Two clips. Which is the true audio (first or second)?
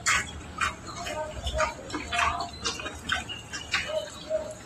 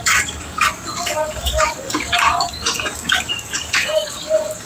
first